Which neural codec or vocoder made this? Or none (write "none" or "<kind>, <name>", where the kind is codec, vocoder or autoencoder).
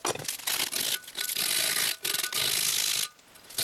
none